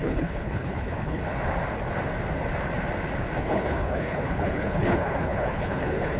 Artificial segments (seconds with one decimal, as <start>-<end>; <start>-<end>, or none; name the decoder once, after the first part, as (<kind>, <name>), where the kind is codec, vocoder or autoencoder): 0.0-1.2 (codec, HILCodec); 3.4-6.2